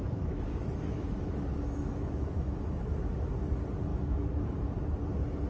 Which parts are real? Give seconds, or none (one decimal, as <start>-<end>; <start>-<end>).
3.3-3.9; 4.6-5.5